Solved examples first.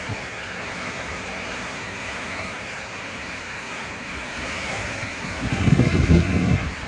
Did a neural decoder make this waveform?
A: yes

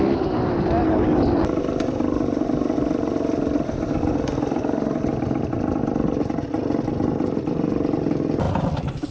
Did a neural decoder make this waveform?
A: no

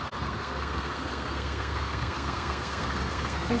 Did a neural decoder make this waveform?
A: yes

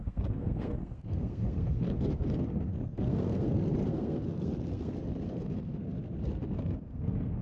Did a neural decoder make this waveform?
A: yes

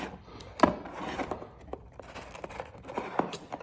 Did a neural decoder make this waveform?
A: no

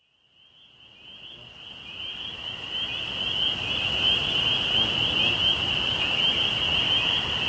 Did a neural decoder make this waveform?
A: no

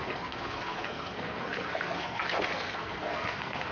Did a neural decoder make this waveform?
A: yes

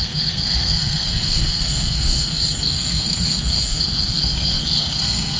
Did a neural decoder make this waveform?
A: yes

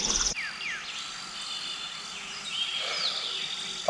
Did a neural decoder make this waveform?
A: no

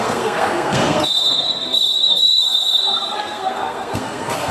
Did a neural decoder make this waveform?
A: yes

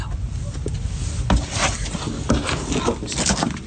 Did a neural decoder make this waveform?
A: no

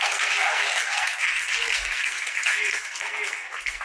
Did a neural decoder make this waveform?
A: yes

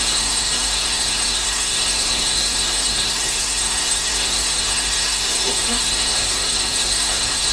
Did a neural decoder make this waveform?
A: yes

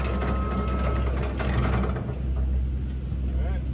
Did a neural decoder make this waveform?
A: no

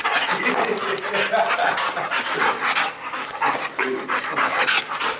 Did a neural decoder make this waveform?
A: no